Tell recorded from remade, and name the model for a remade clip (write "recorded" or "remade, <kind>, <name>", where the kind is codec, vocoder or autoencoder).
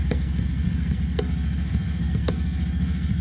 remade, codec, SNAC